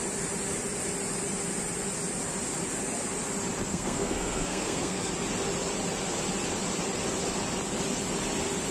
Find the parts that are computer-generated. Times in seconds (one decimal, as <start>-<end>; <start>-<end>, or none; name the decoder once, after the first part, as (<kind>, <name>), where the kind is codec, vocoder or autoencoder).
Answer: 3.7-5.1 (codec, SNAC)